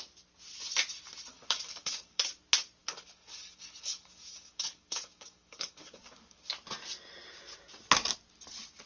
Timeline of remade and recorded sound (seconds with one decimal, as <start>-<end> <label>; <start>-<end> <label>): 0.0-1.3 recorded; 1.3-2.2 remade; 2.2-2.8 recorded; 2.8-6.5 remade; 6.5-8.9 recorded